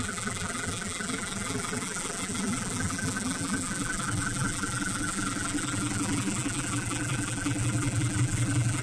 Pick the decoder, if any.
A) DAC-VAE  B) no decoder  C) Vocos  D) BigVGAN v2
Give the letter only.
D